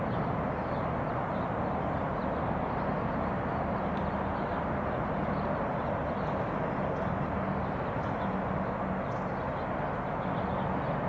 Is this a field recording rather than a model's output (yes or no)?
yes